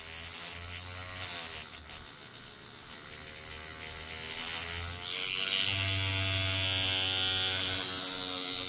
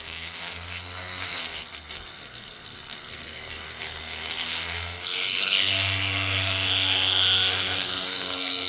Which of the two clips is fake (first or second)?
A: second